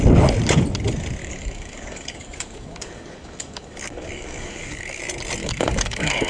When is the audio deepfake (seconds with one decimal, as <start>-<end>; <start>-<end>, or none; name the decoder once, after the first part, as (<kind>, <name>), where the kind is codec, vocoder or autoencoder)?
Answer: 1.2-5.0 (codec, DAC); 5.4-6.3